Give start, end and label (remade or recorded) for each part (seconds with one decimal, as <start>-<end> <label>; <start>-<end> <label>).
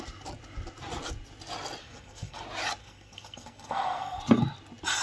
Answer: 0.0-1.8 recorded; 1.8-2.4 remade; 2.4-2.8 recorded; 2.8-4.2 remade; 4.2-5.0 recorded